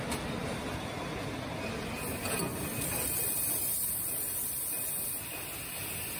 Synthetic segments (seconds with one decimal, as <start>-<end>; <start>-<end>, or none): 0.4-1.0; 2.5-4.5